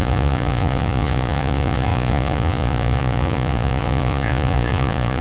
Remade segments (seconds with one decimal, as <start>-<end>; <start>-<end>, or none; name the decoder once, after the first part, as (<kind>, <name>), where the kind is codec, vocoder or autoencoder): 0.0-5.2 (vocoder, Vocos)